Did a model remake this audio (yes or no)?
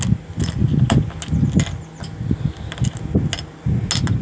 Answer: no